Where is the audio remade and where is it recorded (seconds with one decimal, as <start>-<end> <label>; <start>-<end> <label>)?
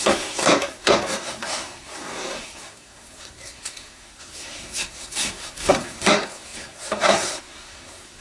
0.0-8.2 remade